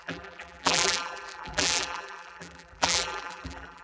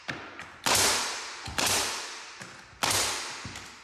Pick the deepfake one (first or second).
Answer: first